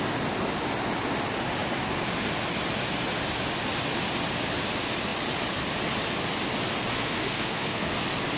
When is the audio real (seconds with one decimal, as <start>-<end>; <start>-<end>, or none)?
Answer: 0.0-6.9; 8.0-8.4

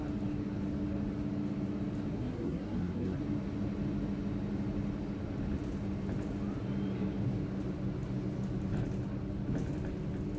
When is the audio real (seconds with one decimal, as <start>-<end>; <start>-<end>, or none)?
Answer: 0.0-2.1; 3.2-10.4

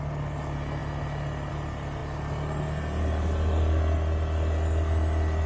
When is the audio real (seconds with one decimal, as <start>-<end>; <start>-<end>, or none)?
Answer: 0.0-5.5

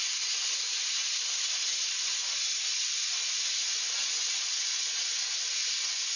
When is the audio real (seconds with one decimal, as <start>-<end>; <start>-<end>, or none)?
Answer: 0.0-6.2

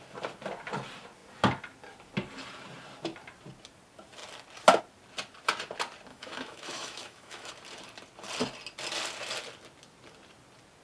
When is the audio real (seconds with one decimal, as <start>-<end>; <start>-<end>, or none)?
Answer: 0.0-6.1; 7.5-10.8

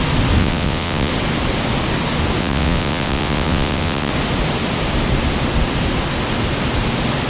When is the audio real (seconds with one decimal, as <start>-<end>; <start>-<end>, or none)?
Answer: 0.0-0.4; 1.1-2.4; 4.1-7.3

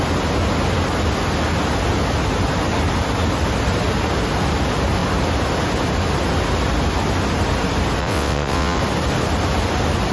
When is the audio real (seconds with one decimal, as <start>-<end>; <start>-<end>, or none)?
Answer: 0.0-8.0; 8.8-10.1

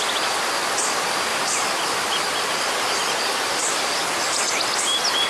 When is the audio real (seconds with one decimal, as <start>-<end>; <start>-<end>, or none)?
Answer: 0.0-3.6; 4.4-5.3